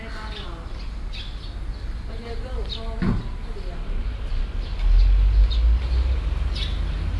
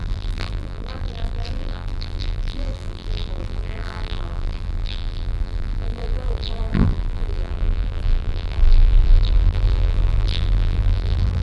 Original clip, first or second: first